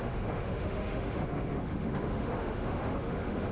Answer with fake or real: fake